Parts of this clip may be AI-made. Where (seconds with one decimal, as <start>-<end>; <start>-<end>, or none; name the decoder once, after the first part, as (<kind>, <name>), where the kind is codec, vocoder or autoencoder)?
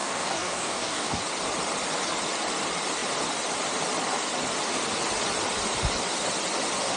0.0-1.2 (codec, DAC)